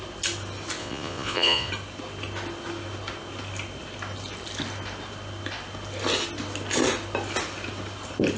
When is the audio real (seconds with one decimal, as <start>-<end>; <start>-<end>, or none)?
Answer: 0.0-0.8; 1.7-8.4